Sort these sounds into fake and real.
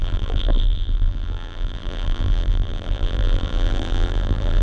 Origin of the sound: fake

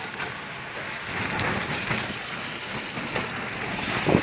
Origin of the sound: real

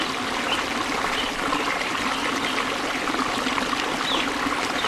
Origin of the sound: fake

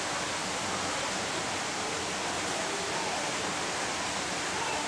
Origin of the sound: real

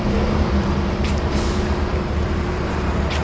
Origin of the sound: fake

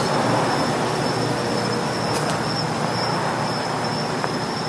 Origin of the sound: real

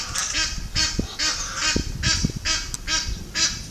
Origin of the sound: real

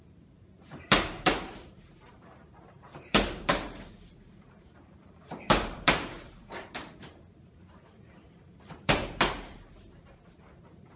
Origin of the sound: fake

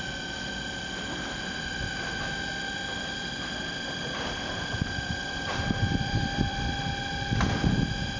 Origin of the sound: fake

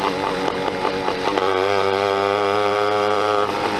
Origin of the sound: fake